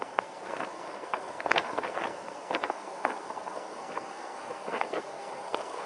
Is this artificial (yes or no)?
yes